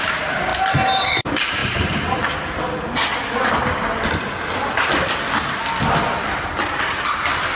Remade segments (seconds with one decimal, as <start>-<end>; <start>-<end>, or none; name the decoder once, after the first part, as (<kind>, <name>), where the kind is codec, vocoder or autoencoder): none